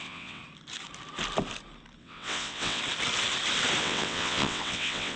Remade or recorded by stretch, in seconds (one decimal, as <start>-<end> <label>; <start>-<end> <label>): 0.0-0.4 remade; 0.4-2.0 recorded; 2.0-2.8 remade; 2.8-3.8 recorded; 3.8-5.2 remade

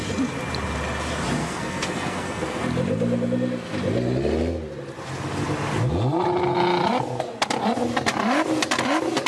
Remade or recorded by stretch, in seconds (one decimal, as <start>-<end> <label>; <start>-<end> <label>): 0.0-1.4 recorded; 1.4-2.6 remade; 2.6-9.3 recorded

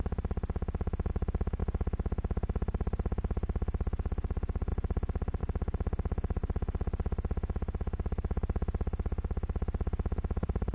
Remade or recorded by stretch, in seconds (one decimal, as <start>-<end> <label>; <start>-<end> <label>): 0.0-10.7 recorded

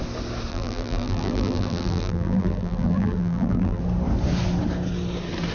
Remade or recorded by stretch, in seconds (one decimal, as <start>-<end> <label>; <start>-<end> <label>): 0.0-0.5 recorded; 0.5-3.8 remade; 3.8-5.5 recorded

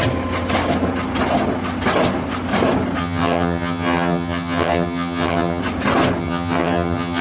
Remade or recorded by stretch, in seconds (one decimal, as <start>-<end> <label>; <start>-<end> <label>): 0.0-3.0 recorded; 3.0-5.6 remade; 5.6-6.2 recorded; 6.2-7.2 remade